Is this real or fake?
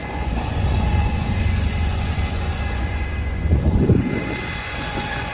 fake